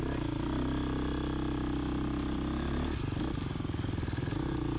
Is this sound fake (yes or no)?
no